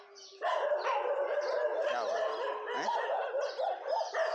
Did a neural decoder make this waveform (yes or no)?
no